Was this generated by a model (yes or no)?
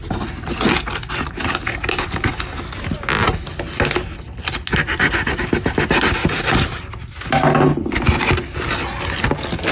no